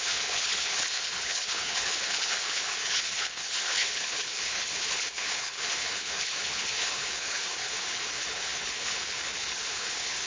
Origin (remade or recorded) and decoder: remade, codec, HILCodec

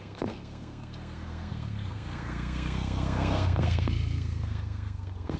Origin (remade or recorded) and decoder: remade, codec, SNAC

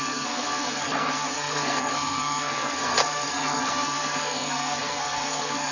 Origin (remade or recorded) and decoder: remade, codec, SNAC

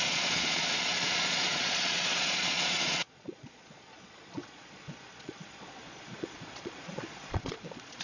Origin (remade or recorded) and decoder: remade, vocoder, Vocos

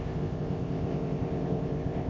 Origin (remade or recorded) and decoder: remade, codec, ZipCodec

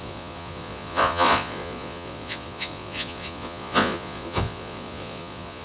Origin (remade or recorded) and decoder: remade, vocoder, Vocos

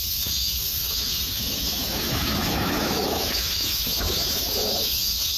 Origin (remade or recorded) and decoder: remade, autoencoder, DAC-VAE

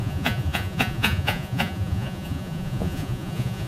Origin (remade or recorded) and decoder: remade, vocoder, Vocos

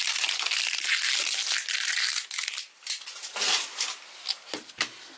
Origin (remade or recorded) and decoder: recorded